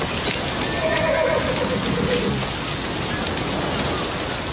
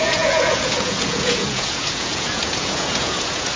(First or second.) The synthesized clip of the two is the second